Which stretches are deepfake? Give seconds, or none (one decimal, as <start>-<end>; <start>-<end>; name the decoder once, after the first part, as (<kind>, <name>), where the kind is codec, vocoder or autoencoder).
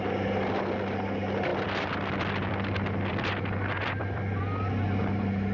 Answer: 1.5-4.4 (vocoder, BigVGAN v2)